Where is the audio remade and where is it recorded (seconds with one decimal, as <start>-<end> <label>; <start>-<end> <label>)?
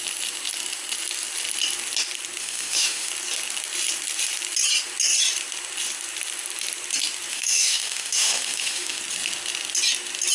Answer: 0.0-2.4 recorded; 2.4-3.1 remade; 3.1-7.3 recorded; 7.3-9.0 remade; 9.0-10.3 recorded